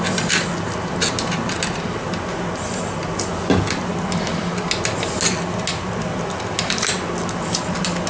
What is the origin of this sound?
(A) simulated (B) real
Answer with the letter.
B